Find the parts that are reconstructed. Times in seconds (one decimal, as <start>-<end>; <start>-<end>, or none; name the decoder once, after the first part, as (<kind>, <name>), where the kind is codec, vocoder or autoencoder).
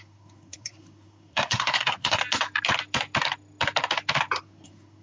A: 0.0-2.2 (codec, SNAC); 4.4-5.0